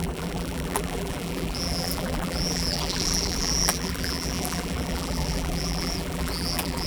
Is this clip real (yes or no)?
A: no